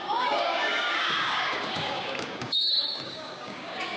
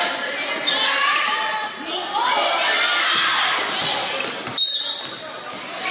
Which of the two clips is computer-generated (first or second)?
first